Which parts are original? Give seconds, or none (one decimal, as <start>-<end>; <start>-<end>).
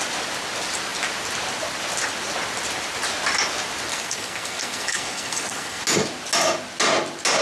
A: 0.0-3.9; 5.8-7.4